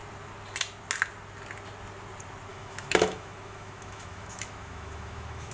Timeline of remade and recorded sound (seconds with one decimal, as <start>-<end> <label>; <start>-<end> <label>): 0.0-2.5 recorded; 2.5-5.5 remade